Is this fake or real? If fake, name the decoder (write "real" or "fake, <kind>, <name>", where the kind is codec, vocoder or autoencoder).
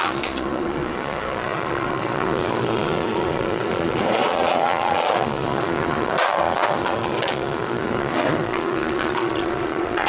fake, vocoder, Vocos